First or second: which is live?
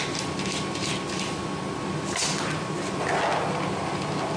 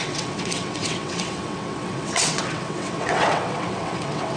first